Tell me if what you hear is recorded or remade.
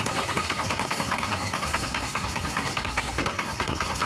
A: remade